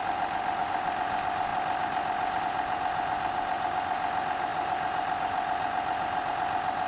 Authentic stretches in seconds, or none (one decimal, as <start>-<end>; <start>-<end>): 0.0-6.9